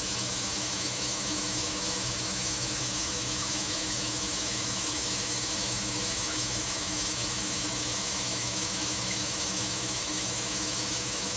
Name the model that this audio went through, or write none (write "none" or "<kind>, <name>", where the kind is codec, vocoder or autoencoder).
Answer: autoencoder, DAC-VAE